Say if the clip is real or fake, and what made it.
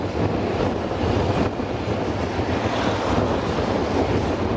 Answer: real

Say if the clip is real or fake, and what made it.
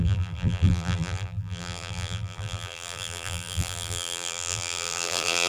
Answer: fake, vocoder, BigVGAN v2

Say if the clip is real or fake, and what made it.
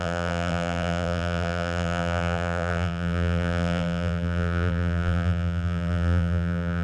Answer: fake, vocoder, BigVGAN v2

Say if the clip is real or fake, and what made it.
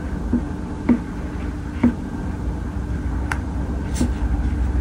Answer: real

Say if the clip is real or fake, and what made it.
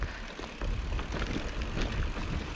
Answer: real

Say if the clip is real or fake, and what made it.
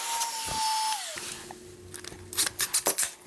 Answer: real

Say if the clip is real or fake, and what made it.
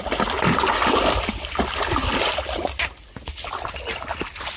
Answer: real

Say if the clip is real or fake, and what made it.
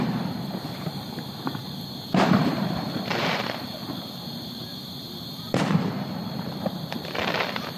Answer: fake, vocoder, BigVGAN v2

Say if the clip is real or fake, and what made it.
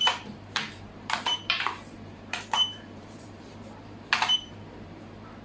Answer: fake, vocoder, BigVGAN v2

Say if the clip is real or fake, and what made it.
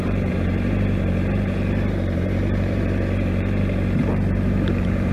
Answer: fake, vocoder, BigVGAN v2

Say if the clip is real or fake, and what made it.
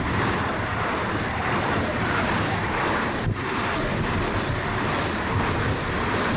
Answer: fake, vocoder, BigVGAN v2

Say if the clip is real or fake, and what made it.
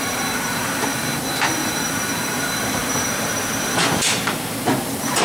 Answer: fake, vocoder, BigVGAN v2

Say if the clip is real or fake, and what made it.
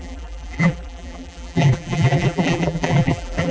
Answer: fake, vocoder, BigVGAN v2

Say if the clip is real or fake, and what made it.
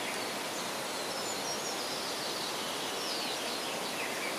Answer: real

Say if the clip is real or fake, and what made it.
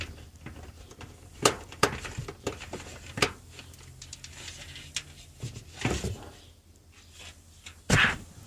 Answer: fake, vocoder, BigVGAN v2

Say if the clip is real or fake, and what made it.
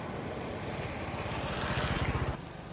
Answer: real